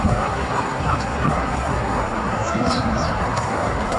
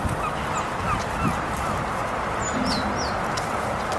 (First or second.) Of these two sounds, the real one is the second